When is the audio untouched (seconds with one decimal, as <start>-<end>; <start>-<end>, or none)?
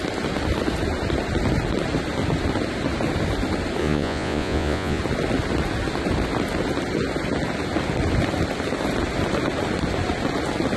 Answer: 0.0-3.8; 5.0-10.8